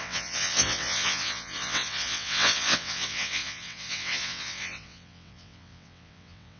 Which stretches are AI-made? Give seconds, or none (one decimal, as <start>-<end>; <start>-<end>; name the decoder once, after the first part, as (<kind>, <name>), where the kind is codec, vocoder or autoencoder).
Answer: 0.0-6.6 (vocoder, WaveNeXt)